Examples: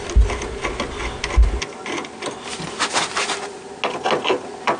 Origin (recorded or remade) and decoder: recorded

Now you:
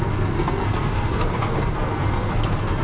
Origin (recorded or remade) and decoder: remade, codec, SNAC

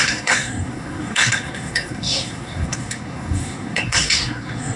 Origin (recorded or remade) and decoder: remade, codec, SNAC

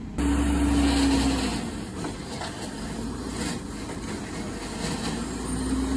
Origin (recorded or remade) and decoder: recorded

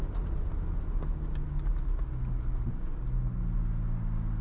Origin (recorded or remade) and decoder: recorded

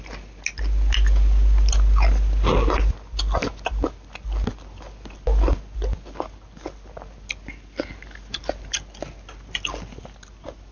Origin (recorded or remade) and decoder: recorded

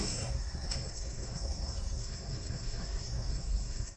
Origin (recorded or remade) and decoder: remade, codec, SNAC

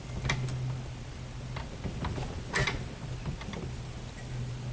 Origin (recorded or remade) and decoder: recorded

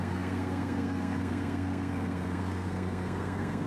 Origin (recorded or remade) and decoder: remade, codec, SNAC